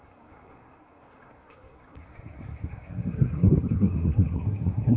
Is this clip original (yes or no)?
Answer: no